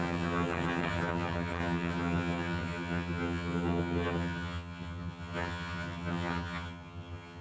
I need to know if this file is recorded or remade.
remade